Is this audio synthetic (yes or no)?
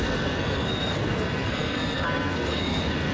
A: yes